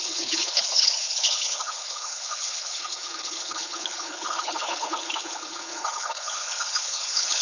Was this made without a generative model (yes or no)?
no